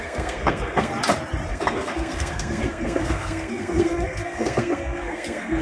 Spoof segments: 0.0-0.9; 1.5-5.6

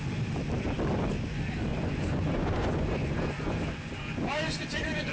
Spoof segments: 1.7-5.1

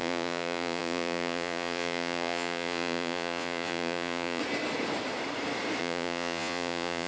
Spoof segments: 0.0-4.4; 5.8-7.1

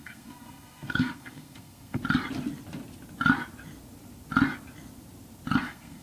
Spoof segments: 0.0-2.0; 5.6-6.0

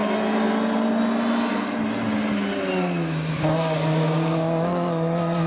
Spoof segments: 3.3-4.7

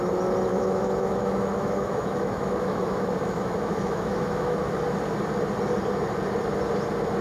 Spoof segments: 0.5-4.8